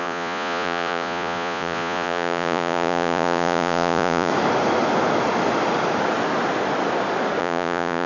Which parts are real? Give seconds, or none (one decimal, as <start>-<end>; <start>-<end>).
4.3-7.4